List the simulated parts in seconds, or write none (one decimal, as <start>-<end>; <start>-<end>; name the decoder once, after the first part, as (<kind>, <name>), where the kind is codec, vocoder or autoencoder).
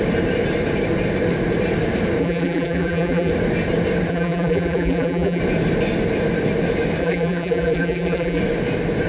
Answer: 2.2-3.3 (vocoder, BigVGAN v2); 4.1-5.4; 7.0-8.4